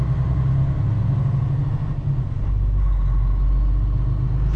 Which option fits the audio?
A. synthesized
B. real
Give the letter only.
B